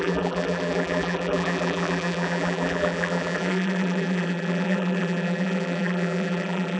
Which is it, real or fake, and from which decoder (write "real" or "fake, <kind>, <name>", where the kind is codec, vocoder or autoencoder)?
fake, vocoder, BigVGAN v2